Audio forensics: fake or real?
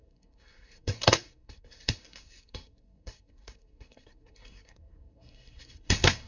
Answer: fake